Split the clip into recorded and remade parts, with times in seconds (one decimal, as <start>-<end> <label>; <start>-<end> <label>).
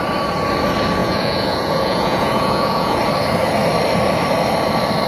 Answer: 0.0-1.0 recorded; 1.0-3.0 remade; 3.0-5.1 recorded